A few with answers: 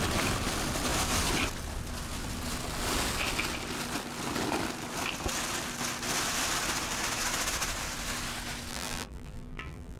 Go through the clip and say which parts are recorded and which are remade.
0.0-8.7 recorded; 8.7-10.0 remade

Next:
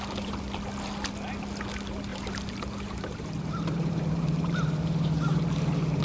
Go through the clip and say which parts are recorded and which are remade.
0.0-2.1 recorded; 2.1-6.0 remade